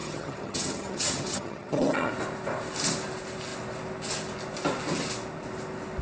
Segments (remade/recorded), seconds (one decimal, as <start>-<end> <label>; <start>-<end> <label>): 0.0-2.1 remade; 2.1-6.0 recorded